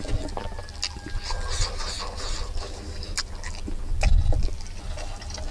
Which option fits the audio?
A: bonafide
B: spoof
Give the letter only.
A